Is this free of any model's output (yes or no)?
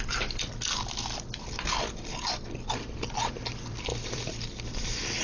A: no